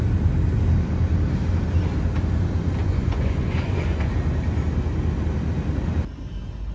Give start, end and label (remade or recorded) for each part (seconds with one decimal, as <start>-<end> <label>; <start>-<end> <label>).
0.0-2.8 recorded; 2.8-4.1 remade; 4.1-6.7 recorded

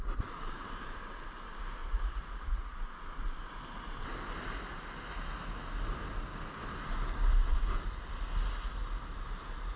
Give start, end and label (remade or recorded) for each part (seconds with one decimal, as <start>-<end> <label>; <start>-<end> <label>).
0.0-1.8 recorded; 1.8-2.8 remade; 2.8-9.8 recorded

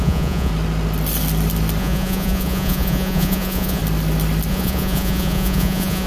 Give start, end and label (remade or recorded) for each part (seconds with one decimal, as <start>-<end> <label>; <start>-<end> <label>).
0.0-0.5 remade; 0.5-1.8 recorded; 1.8-3.8 remade; 3.8-4.5 recorded; 4.5-6.1 remade